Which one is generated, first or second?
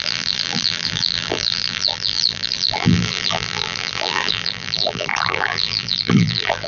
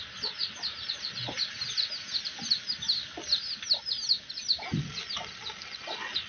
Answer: first